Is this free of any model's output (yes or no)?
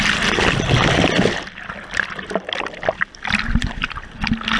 yes